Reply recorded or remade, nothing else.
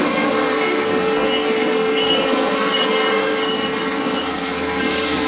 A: remade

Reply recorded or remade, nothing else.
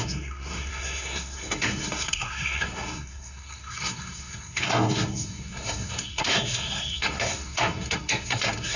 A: remade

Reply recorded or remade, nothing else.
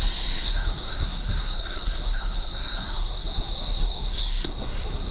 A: remade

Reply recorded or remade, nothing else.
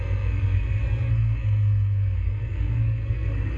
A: remade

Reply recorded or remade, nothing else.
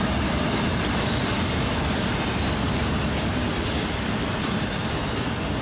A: recorded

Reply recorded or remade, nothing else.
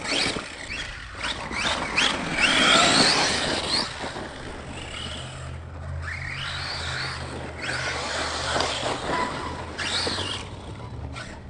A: recorded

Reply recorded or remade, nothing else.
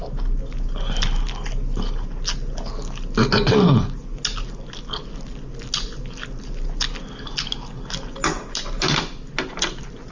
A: recorded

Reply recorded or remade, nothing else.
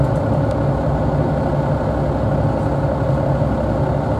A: recorded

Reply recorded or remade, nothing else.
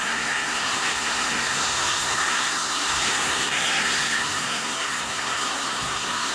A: remade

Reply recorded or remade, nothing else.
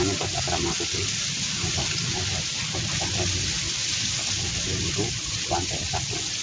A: recorded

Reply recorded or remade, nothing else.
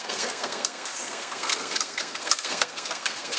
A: remade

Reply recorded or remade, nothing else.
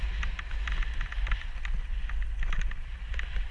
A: recorded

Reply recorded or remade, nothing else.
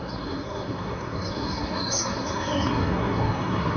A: remade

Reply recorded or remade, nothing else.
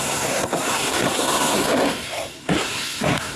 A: remade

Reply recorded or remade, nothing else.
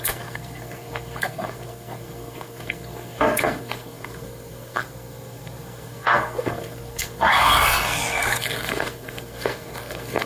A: remade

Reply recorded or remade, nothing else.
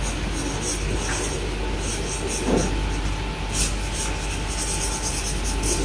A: recorded